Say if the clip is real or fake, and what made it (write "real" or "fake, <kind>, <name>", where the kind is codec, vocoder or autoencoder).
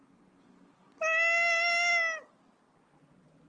real